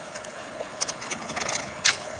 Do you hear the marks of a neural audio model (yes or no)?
yes